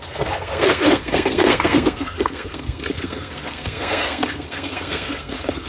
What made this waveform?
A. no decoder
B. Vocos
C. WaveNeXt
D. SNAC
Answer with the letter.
D